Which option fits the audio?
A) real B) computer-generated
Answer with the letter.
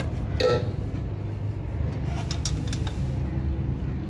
A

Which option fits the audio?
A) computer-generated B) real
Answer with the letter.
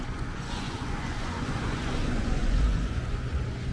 A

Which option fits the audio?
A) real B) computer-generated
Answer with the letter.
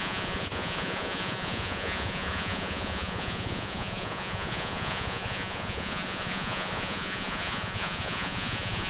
B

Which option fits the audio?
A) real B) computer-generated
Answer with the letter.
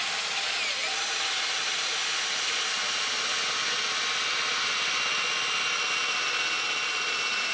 A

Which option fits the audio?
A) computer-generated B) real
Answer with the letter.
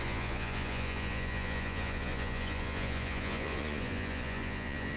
A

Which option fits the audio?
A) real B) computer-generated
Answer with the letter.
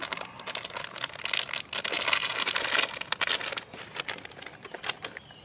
A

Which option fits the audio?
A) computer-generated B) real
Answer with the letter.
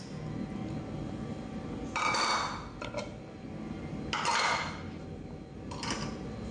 B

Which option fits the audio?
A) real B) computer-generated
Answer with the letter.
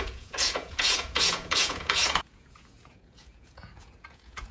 B